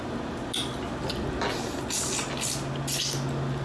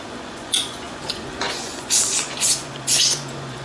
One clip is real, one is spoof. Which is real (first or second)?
first